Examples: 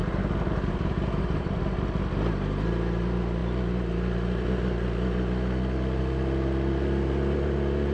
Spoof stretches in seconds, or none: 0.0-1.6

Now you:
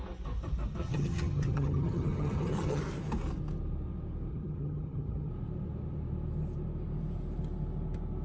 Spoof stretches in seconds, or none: 0.8-2.8; 4.3-5.3

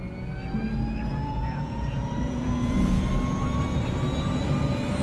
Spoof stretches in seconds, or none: 1.1-3.1

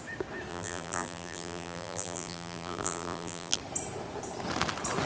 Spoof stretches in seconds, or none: 0.5-3.6